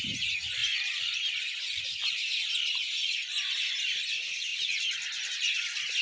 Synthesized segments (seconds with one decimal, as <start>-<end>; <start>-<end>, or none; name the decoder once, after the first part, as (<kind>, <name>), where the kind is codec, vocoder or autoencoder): none